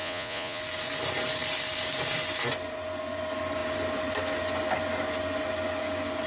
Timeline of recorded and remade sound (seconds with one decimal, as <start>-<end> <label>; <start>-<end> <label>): 0.0-0.6 remade; 0.6-6.3 recorded